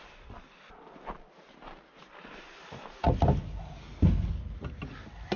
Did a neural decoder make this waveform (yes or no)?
no